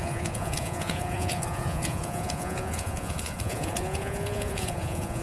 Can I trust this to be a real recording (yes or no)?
no